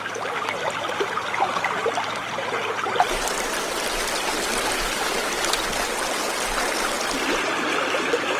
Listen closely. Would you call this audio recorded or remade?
recorded